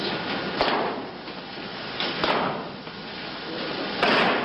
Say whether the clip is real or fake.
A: real